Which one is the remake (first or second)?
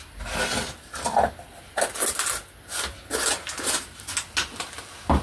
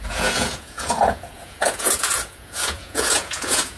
second